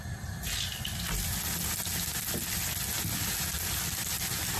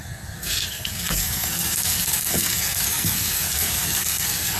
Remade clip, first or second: second